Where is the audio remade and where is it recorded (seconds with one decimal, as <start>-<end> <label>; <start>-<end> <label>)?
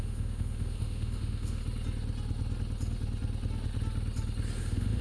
0.0-1.6 remade; 1.6-4.6 recorded; 4.6-5.0 remade